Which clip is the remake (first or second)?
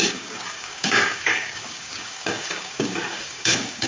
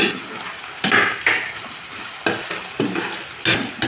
first